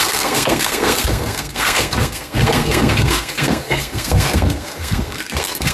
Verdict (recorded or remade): remade